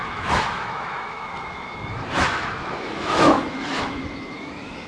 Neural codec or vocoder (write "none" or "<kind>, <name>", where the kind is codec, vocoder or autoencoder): autoencoder, DAC-VAE